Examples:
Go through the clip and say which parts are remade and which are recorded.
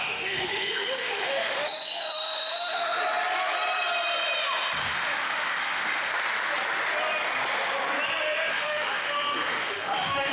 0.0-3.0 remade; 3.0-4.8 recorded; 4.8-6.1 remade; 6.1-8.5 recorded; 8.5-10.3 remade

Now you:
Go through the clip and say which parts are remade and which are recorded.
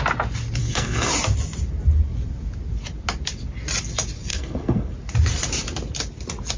0.0-0.6 recorded; 0.6-1.1 remade; 1.1-4.3 recorded; 4.3-4.9 remade; 4.9-6.6 recorded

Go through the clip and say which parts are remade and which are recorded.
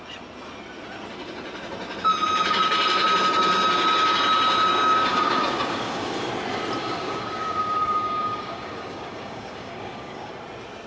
0.0-4.7 recorded; 4.7-6.3 remade; 6.3-6.8 recorded; 6.8-10.3 remade; 10.3-10.9 recorded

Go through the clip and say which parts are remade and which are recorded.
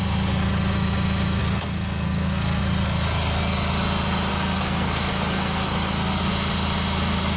0.0-1.4 recorded; 1.4-2.6 remade; 2.6-4.3 recorded; 4.3-6.2 remade; 6.2-7.4 recorded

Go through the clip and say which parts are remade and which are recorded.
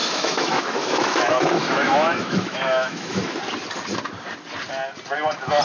0.0-3.4 remade; 3.4-5.6 recorded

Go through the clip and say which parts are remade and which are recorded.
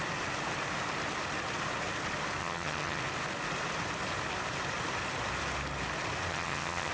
0.0-2.4 recorded; 2.4-3.0 remade; 3.0-6.3 recorded; 6.3-6.9 remade